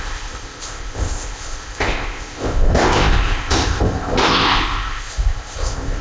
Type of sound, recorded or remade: remade